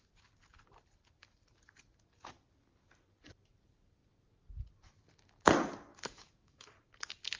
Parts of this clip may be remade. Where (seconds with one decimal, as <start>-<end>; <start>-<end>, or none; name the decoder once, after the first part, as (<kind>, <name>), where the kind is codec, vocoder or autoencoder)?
5.9-6.7 (autoencoder, DAC-VAE)